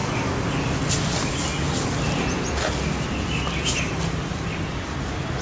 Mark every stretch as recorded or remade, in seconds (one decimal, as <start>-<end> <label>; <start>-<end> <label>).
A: 0.0-5.4 recorded